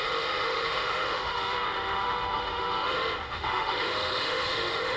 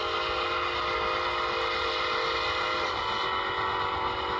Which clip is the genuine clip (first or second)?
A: second